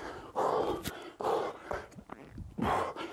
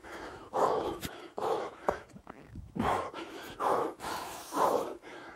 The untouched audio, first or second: first